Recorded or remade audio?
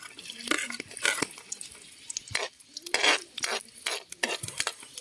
recorded